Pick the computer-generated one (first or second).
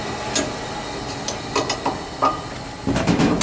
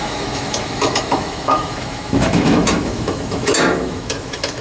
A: second